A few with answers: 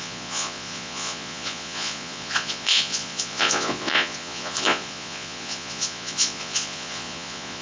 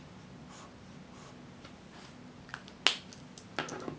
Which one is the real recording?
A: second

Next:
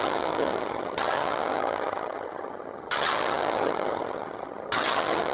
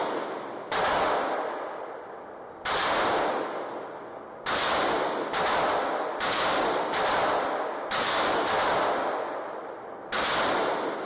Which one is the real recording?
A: second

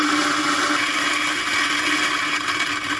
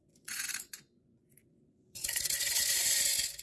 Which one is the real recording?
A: first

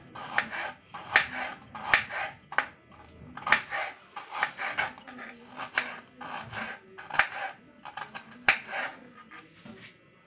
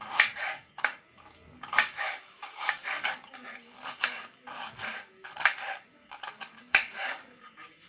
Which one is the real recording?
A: first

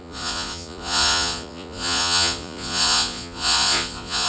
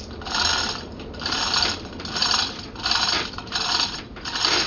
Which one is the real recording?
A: second